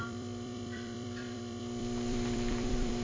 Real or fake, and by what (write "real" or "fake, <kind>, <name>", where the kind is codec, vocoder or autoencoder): fake, vocoder, BigVGAN v2